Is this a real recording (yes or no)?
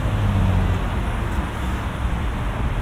yes